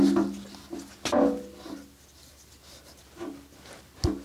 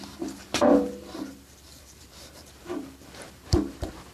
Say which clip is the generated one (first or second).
second